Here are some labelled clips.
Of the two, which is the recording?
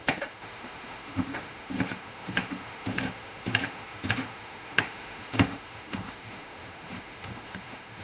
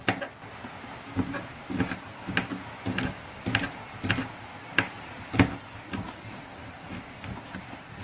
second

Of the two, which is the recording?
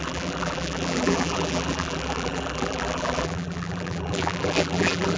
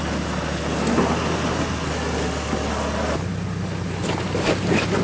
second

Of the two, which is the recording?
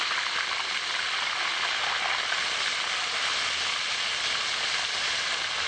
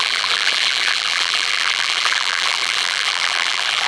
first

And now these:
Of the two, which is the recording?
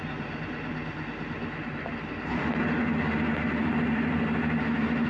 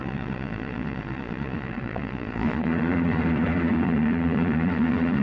first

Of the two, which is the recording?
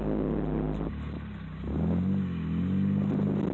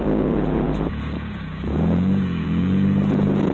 first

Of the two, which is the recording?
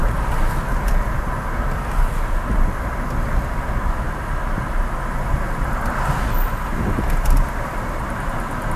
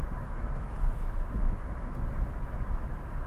first